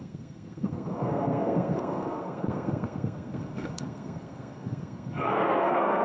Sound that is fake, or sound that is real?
fake